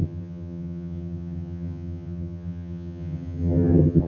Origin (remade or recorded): remade